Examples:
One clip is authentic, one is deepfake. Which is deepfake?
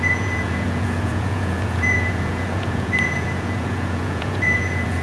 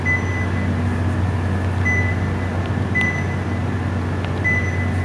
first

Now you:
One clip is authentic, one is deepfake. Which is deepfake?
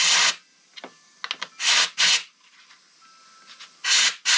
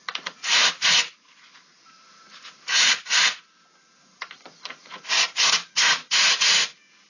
second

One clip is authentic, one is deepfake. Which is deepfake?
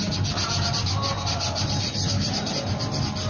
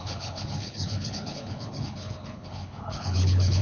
second